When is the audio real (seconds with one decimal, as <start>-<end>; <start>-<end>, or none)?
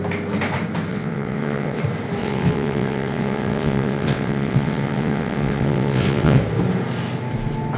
0.0-0.9; 1.8-2.2; 6.4-7.8